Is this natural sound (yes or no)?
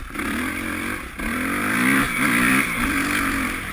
no